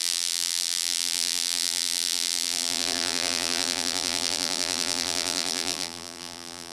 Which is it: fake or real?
fake